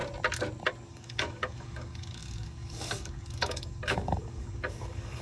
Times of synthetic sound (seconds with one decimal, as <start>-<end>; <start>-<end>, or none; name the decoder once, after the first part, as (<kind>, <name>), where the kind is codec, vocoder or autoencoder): 0.9-5.2 (codec, DAC)